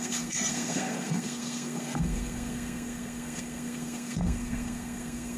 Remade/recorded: remade